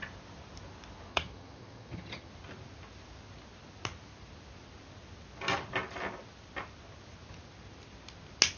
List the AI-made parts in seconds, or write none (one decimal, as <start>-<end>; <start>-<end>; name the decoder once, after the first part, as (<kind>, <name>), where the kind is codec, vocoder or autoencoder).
1.1-2.3 (vocoder, HiFi-GAN)